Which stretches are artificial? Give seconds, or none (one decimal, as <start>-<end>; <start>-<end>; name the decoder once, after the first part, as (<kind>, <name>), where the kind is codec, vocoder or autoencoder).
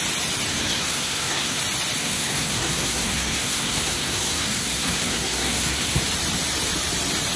0.5-1.6 (codec, SNAC); 2.0-6.0